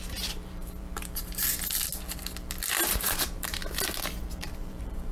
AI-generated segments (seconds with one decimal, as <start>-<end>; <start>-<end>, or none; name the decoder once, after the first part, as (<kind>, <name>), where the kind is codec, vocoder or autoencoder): 0.0-1.3 (vocoder, BigVGAN v2); 2.9-3.6; 4.4-5.1